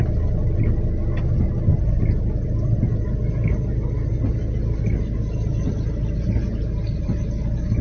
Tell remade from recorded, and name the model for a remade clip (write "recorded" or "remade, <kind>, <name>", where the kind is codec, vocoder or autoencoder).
recorded